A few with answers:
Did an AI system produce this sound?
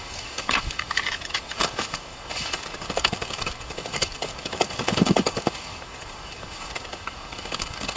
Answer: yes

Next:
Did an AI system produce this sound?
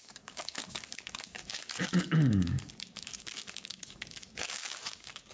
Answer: yes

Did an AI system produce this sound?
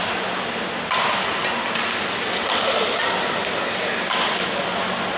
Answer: no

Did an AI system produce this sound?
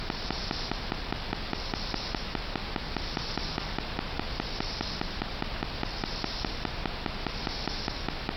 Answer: no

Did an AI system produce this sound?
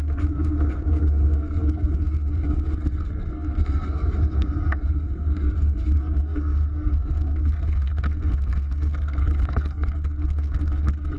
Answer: yes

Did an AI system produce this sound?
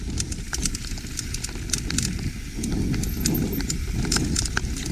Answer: no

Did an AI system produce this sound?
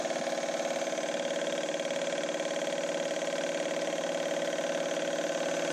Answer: no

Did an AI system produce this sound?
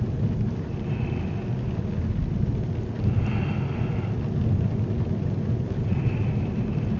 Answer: no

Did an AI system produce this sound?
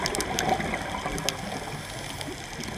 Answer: no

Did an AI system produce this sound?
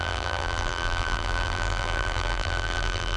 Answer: yes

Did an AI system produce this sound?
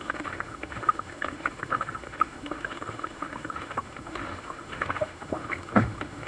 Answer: yes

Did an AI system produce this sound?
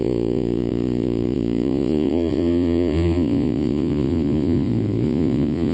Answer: yes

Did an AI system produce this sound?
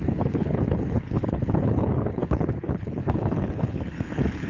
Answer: yes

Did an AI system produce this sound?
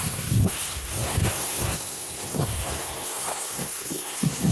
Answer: yes